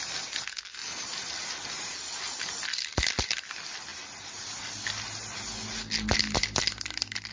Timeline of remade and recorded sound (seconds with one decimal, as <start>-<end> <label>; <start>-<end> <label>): 0.0-7.3 recorded